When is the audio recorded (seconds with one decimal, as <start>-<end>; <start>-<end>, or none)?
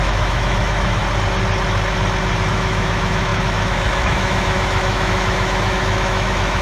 1.0-2.5